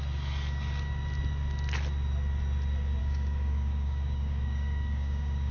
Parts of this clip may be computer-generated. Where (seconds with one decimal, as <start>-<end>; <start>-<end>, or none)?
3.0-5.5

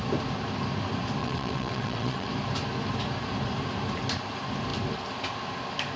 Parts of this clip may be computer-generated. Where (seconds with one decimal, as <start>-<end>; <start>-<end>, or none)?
1.2-2.3

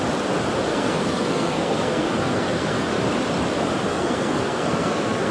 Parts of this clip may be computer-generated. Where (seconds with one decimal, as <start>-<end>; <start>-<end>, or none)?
0.7-2.9; 3.9-5.3

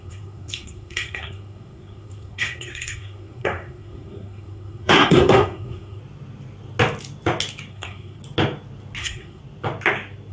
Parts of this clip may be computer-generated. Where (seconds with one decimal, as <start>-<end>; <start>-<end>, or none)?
0.0-6.0; 7.7-8.2; 9.0-9.4

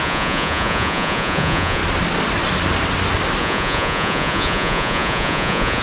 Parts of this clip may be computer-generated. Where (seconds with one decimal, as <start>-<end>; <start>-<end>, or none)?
0.0-1.8; 3.4-5.8